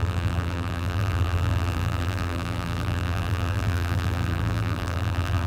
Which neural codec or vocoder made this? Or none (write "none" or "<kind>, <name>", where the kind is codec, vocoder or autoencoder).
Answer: vocoder, BigVGAN v2